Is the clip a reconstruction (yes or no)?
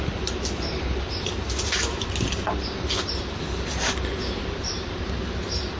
no